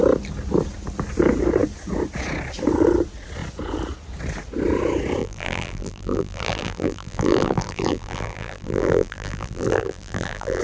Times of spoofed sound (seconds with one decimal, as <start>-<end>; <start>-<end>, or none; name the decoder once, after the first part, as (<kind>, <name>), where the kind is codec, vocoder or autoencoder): 5.2-10.6 (vocoder, BigVGAN v2)